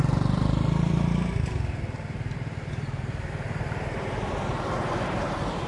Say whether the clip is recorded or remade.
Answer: remade